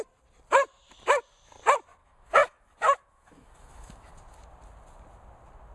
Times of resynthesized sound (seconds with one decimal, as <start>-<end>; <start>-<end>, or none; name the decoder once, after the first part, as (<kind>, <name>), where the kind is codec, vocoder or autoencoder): 2.0-4.1 (autoencoder, DAC-VAE)

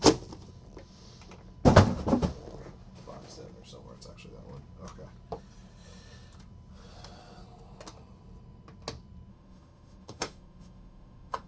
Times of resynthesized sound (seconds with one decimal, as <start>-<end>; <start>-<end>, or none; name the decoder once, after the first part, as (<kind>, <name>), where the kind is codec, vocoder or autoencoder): 9.3-11.5 (autoencoder, DAC-VAE)

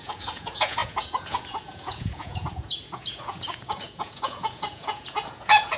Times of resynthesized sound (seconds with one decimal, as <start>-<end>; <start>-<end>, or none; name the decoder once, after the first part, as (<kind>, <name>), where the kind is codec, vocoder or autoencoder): 0.0-5.8 (vocoder, Vocos)

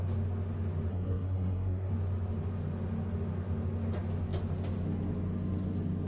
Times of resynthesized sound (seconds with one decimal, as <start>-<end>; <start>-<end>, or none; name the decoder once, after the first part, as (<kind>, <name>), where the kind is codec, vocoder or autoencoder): 0.9-1.9 (codec, SNAC)